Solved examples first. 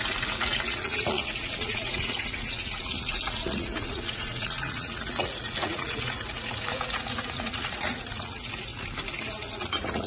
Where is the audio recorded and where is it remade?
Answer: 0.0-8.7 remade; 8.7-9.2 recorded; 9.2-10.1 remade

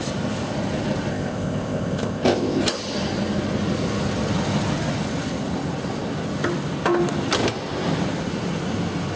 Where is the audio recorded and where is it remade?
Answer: 0.0-1.1 recorded; 1.1-2.6 remade; 2.6-9.2 recorded

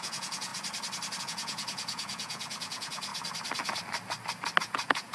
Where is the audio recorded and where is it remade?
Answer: 0.0-0.5 remade; 0.5-1.2 recorded; 1.2-3.1 remade; 3.1-4.6 recorded; 4.6-5.1 remade

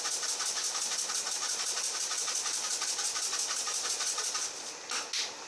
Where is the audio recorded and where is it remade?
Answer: 0.0-5.5 recorded

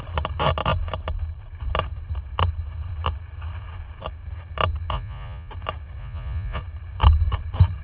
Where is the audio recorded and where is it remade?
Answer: 0.0-4.9 recorded; 4.9-5.5 remade; 5.5-6.0 recorded; 6.0-6.6 remade; 6.6-7.8 recorded

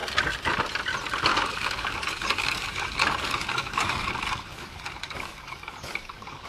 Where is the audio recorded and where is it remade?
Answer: 0.0-1.3 recorded; 1.3-4.1 remade; 4.1-4.5 recorded; 4.5-6.5 remade

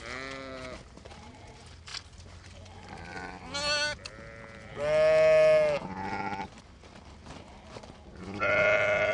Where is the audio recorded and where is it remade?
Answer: 0.0-9.1 recorded